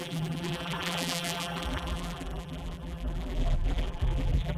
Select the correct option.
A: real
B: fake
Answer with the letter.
B